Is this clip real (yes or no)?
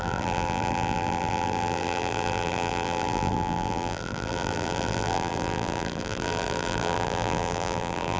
no